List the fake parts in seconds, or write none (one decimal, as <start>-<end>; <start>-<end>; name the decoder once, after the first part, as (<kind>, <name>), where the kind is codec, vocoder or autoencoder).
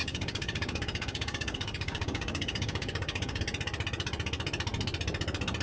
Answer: 0.0-3.4 (codec, DAC)